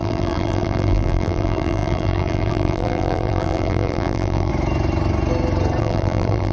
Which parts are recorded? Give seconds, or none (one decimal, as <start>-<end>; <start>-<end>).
4.5-5.8

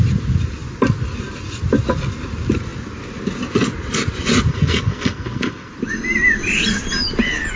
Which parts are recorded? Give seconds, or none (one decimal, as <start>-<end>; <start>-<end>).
0.0-4.5; 5.7-7.6

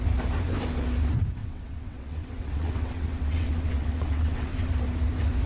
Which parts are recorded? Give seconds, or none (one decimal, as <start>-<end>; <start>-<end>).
0.0-1.4; 4.7-5.5

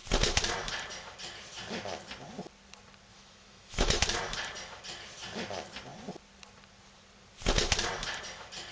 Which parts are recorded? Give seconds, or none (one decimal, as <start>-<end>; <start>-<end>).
0.0-3.1; 4.0-8.7